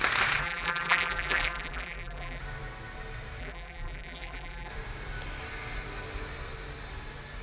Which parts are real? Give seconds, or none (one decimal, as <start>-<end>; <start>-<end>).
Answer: 0.0-0.4; 2.4-3.4; 4.7-7.4